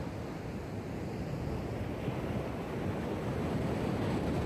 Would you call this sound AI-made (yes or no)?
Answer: no